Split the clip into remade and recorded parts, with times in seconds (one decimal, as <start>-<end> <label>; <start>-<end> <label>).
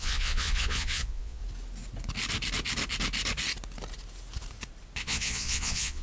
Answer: 0.0-1.4 remade; 1.4-5.0 recorded; 5.0-6.0 remade